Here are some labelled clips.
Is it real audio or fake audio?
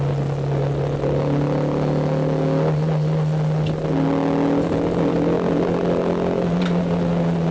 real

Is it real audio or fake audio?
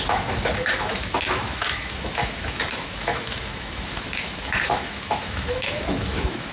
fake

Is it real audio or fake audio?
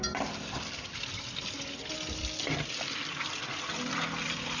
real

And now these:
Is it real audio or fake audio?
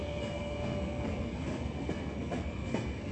fake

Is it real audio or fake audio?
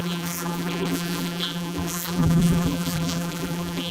fake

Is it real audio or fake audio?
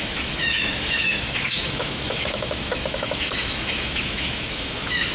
fake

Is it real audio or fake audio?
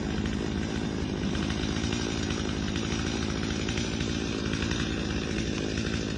real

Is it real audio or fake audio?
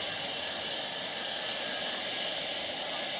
real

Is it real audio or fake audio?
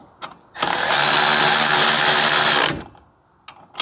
real